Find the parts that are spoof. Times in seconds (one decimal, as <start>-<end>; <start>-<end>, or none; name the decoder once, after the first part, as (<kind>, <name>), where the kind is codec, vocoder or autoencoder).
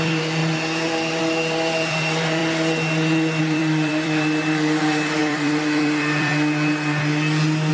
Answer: 0.0-2.4 (vocoder, BigVGAN v2); 3.4-6.3